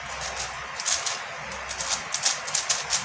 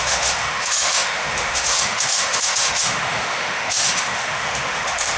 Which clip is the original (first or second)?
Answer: first